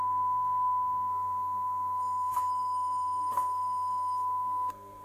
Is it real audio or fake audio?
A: fake